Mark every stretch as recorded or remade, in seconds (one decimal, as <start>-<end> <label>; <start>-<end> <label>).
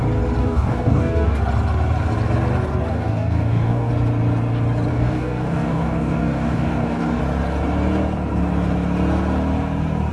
0.0-0.4 recorded; 0.4-1.4 remade; 1.4-2.9 recorded; 2.9-3.9 remade; 3.9-4.9 recorded; 4.9-7.2 remade; 7.2-10.1 recorded